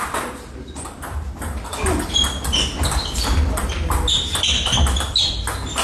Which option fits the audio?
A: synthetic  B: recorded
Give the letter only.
B